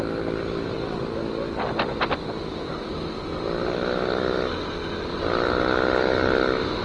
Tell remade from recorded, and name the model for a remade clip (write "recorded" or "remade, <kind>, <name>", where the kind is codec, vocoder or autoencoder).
recorded